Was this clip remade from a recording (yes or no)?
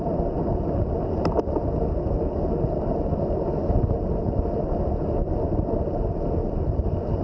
no